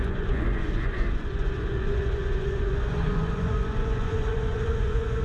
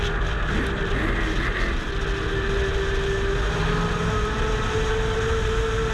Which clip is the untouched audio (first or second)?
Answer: second